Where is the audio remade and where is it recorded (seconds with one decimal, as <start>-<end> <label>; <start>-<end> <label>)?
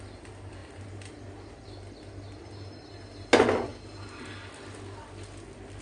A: 0.0-5.8 recorded